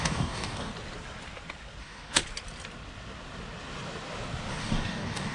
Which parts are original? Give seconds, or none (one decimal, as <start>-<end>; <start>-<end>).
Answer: 0.7-1.8; 2.2-4.5